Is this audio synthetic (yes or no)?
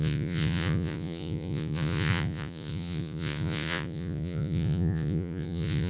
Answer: yes